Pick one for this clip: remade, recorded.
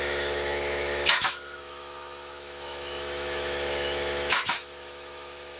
remade